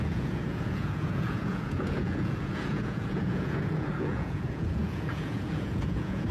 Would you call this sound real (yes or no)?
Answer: no